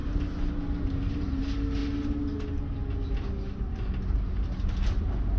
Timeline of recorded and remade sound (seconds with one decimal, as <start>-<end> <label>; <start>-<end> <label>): 0.0-5.4 recorded